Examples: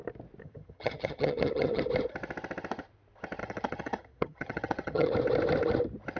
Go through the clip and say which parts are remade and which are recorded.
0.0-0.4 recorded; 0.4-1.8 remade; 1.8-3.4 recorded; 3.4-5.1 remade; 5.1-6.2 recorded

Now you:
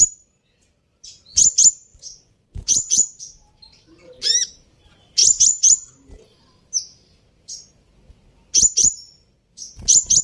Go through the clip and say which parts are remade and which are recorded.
0.0-1.9 recorded; 1.9-3.2 remade; 3.2-10.2 recorded

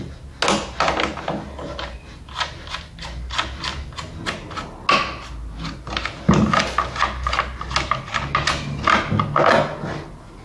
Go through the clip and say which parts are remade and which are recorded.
0.0-10.4 recorded